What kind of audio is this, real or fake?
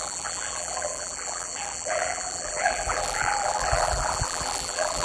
fake